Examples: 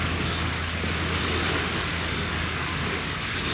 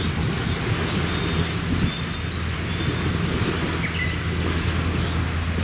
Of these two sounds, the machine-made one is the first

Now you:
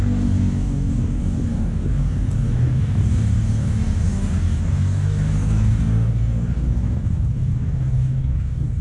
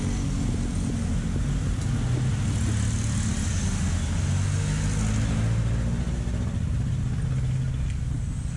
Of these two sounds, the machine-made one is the first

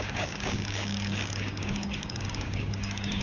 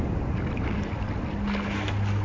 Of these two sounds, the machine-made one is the first